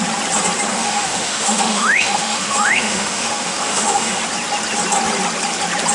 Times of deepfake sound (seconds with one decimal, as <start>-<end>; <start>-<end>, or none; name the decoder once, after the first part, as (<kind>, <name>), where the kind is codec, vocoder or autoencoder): 0.7-4.2 (autoencoder, DAC-VAE)